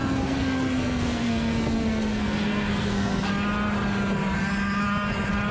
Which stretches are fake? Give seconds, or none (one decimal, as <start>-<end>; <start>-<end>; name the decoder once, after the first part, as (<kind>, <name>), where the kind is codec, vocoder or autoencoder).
0.0-3.3 (codec, SNAC)